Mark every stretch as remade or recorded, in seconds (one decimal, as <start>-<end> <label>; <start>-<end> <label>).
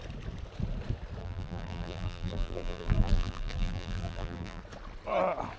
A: 0.0-1.2 recorded; 1.2-4.6 remade; 4.6-5.6 recorded